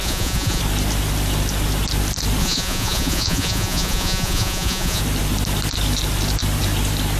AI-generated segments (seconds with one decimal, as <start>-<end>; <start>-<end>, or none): 0.0-0.6; 2.4-5.0